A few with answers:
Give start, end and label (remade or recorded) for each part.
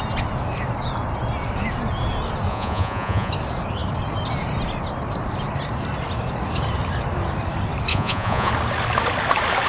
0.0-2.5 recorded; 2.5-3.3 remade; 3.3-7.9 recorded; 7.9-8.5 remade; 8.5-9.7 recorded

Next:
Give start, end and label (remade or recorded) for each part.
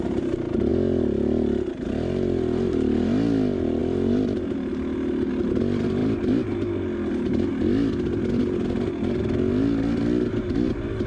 0.0-11.1 recorded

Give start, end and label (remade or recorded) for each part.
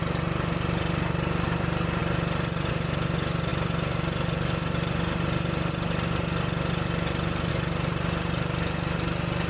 0.0-9.5 recorded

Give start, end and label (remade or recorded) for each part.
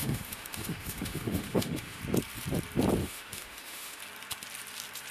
0.0-2.0 remade; 2.0-3.0 recorded; 3.0-4.0 remade; 4.0-5.1 recorded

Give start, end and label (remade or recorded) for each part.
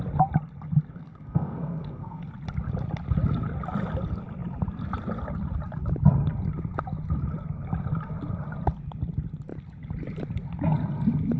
0.0-1.0 recorded; 1.0-2.2 remade; 2.2-11.4 recorded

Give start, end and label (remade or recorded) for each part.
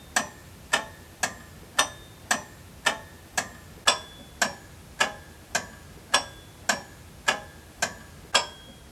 0.0-0.4 recorded; 0.4-1.2 remade; 1.2-8.9 recorded